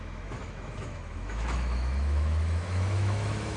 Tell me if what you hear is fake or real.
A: fake